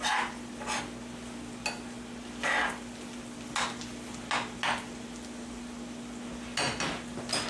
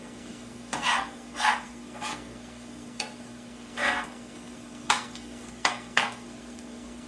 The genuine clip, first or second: first